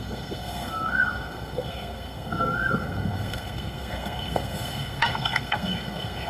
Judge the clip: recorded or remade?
remade